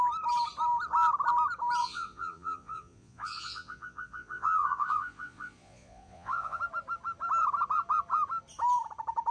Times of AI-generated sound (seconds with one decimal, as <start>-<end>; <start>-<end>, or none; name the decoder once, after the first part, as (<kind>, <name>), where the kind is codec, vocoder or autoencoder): 1.8-6.6 (vocoder, Vocos)